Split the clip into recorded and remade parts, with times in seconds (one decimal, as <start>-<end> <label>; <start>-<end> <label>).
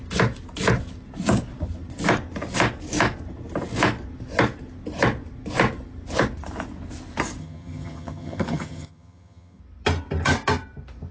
0.0-7.4 recorded; 7.4-9.6 remade; 9.6-11.1 recorded